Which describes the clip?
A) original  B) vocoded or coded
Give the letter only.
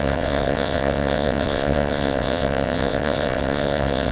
B